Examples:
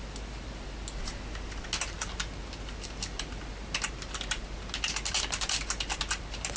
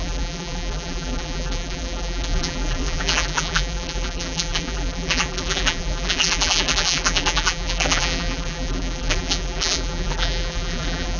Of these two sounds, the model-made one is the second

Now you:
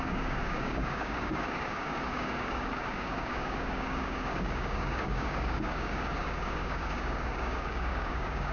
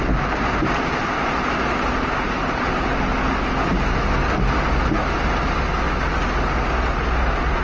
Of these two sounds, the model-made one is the first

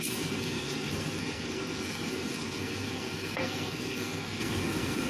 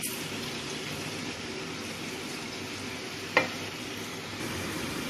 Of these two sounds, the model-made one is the first